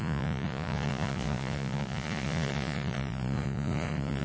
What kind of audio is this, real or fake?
fake